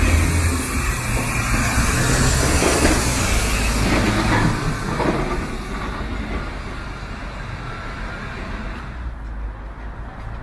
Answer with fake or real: real